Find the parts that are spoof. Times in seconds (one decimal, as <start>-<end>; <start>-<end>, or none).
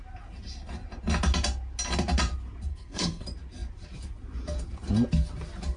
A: 2.7-3.2